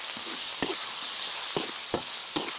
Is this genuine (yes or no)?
yes